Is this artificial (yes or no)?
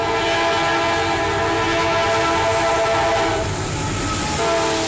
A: no